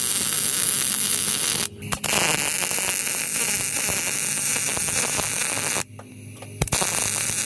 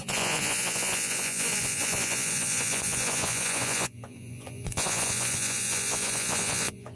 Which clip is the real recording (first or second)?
first